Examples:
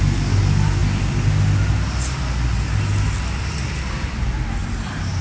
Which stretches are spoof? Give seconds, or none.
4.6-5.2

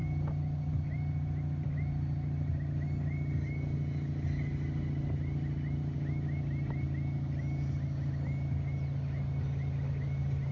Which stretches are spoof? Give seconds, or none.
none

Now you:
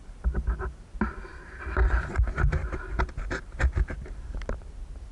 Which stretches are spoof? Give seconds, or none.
1.3-4.4

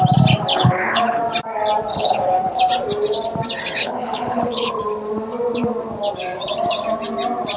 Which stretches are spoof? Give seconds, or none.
0.5-1.2; 1.9-2.6; 3.8-4.8

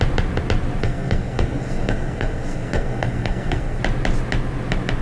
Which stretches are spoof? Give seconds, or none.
0.8-3.8